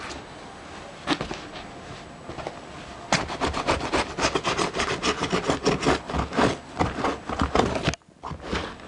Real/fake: real